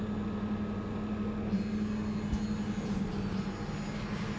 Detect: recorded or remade recorded